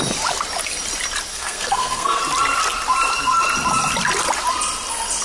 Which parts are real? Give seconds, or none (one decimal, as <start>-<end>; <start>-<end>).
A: 0.0-1.3; 2.2-5.2

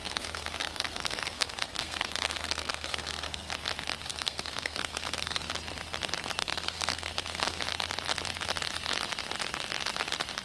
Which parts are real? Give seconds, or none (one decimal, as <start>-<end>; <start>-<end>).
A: 3.5-4.1; 5.5-6.4; 7.6-10.4

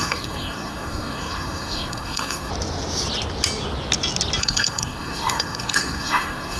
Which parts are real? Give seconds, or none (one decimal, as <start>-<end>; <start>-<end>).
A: 2.5-4.4